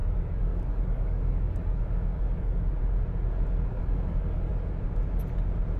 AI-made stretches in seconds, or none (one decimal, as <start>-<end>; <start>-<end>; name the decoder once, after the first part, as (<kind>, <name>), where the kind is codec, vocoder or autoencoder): 0.0-2.8 (codec, DAC); 3.7-4.5